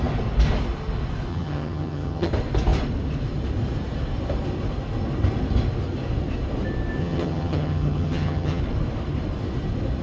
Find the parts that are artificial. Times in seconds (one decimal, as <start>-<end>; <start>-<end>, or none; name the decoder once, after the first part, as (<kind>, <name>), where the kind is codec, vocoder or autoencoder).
1.3-2.3 (vocoder, HiFi-GAN); 7.0-8.6

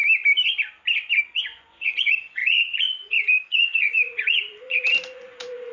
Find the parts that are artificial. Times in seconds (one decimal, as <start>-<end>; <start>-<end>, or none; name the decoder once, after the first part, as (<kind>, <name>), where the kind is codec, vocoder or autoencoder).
1.2-5.7 (vocoder, Vocos)

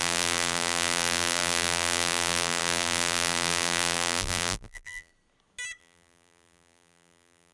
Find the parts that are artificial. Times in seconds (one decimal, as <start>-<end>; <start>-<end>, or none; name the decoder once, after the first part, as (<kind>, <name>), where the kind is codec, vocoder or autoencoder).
0.0-5.1 (vocoder, BigVGAN v2); 5.8-7.5